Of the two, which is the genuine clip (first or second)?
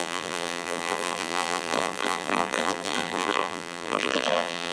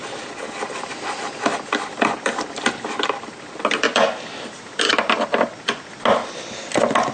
second